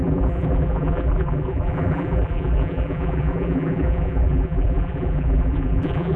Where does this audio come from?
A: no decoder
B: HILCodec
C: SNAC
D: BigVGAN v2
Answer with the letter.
D